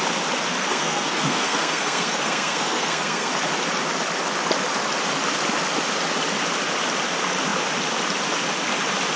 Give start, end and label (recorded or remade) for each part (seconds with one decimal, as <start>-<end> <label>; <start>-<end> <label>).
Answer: 0.0-0.6 recorded; 0.6-3.3 remade; 3.3-9.2 recorded